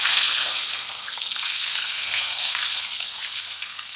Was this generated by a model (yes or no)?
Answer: yes